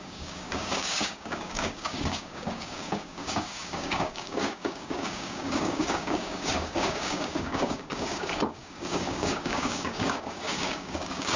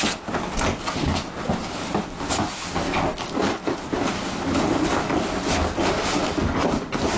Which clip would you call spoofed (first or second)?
first